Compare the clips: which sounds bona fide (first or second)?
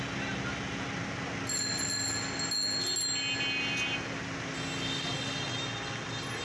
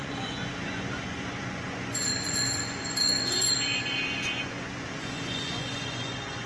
first